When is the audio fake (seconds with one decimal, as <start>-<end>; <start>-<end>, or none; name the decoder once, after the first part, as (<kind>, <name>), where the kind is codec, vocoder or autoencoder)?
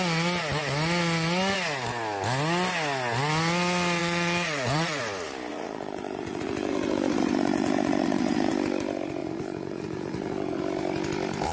4.0-5.0 (vocoder, Vocos); 5.5-8.5; 9.2-10.6